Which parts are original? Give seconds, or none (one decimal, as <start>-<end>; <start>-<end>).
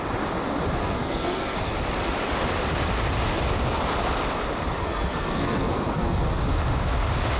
0.0-0.8; 1.7-4.8; 6.4-7.4